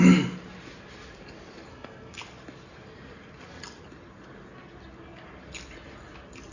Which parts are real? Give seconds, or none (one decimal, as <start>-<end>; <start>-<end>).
0.0-1.7; 2.2-6.5